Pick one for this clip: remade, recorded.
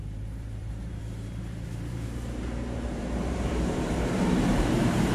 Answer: remade